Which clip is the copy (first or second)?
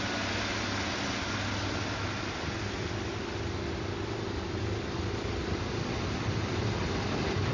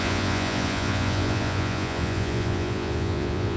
second